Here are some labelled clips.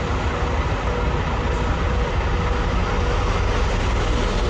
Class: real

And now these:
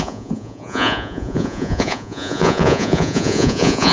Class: fake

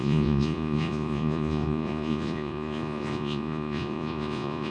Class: fake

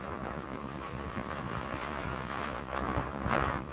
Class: fake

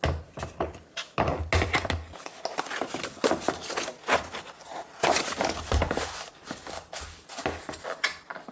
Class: real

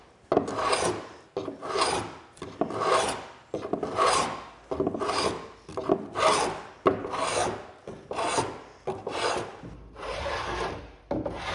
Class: real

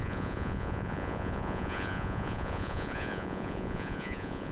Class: fake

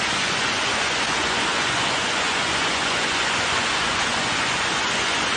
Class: fake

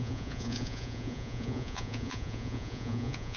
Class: fake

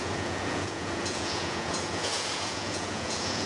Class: fake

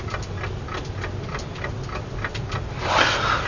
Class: real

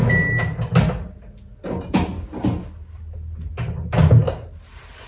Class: real